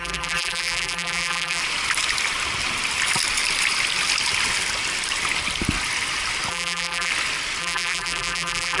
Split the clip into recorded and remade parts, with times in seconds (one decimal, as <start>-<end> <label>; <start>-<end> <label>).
0.0-1.6 remade; 1.6-6.5 recorded; 6.5-7.1 remade; 7.1-7.6 recorded; 7.6-8.8 remade